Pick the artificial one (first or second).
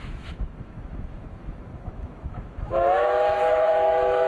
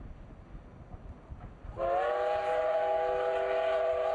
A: first